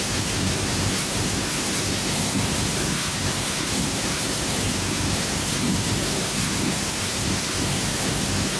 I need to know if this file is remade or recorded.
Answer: remade